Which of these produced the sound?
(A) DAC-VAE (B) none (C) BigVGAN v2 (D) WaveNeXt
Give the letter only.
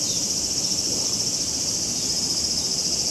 C